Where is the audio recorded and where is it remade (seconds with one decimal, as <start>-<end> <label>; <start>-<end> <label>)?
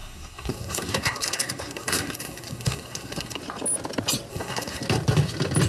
0.0-3.4 remade; 3.4-4.3 recorded; 4.3-4.8 remade; 4.8-5.7 recorded